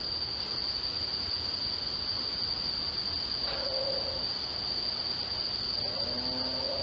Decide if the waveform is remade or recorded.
recorded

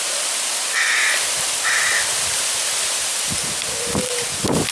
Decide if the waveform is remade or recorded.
recorded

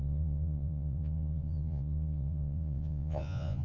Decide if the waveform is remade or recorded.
remade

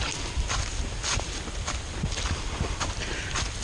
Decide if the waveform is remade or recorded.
recorded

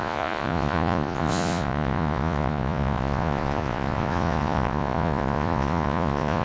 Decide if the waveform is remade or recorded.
remade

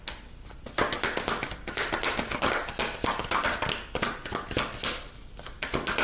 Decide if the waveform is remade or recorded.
recorded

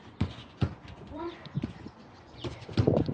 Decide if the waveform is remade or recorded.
remade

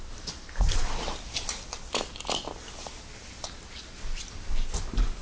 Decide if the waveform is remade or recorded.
recorded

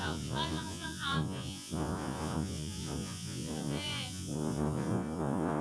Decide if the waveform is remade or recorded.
remade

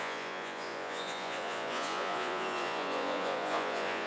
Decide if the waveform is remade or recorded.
remade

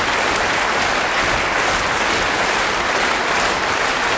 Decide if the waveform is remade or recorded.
recorded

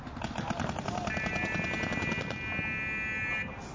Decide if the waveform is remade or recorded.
recorded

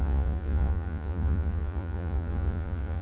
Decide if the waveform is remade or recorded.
remade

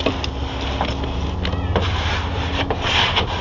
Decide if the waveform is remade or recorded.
recorded